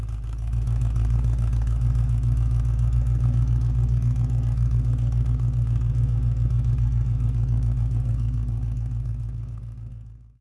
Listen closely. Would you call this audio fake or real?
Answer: fake